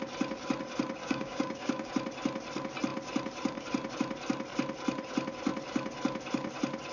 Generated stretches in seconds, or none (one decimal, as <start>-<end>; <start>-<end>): 1.0-1.9